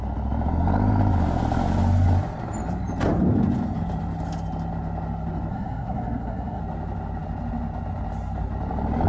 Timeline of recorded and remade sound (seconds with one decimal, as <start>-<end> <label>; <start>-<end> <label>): 0.0-5.5 recorded; 5.5-6.6 remade; 6.6-9.1 recorded